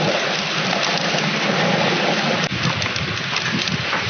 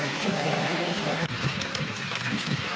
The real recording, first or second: first